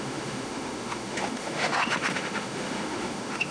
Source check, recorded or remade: remade